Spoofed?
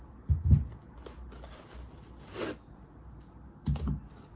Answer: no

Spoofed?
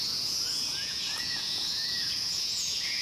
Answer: yes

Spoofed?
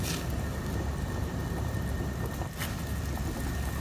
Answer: no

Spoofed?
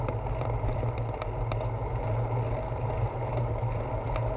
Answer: no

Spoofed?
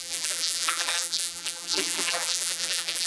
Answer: yes